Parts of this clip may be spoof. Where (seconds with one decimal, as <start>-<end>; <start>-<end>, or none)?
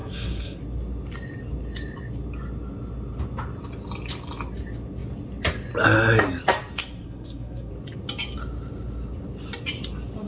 0.0-0.6; 6.8-7.7